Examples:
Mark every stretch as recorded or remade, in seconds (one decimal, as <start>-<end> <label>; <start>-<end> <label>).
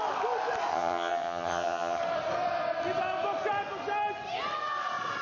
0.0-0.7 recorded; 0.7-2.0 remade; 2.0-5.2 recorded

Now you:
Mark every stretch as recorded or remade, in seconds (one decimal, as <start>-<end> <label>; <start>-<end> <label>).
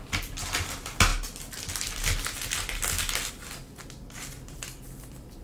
0.0-5.4 recorded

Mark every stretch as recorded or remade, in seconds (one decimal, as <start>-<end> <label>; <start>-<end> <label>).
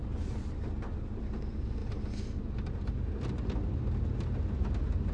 0.0-5.1 recorded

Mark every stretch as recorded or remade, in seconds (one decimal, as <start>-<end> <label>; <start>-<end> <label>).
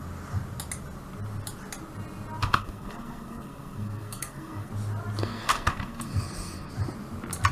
0.0-2.4 recorded; 2.4-4.7 remade; 4.7-5.2 recorded; 5.2-6.7 remade; 6.7-7.5 recorded